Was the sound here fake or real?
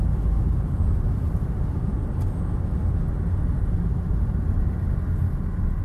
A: real